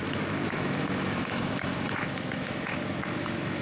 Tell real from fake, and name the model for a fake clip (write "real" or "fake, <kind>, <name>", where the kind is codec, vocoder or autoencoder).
fake, autoencoder, DAC-VAE